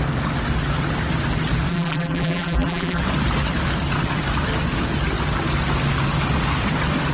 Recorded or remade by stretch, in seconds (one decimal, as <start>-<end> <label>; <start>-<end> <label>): 0.0-1.7 recorded; 1.7-3.0 remade; 3.0-7.1 recorded